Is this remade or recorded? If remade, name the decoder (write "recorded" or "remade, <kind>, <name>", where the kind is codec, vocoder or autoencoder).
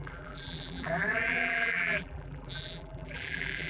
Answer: remade, vocoder, BigVGAN v2